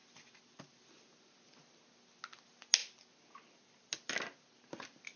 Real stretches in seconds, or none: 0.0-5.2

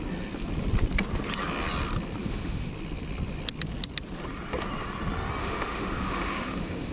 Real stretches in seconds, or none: 0.0-2.2; 2.7-5.4